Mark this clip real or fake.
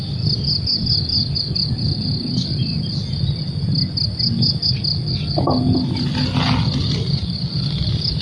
real